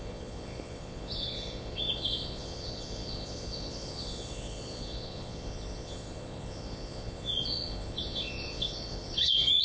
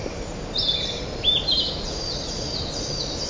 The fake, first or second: first